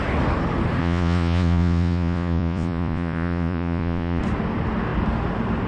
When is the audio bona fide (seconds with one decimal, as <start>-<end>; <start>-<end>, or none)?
0.0-0.8; 4.2-5.7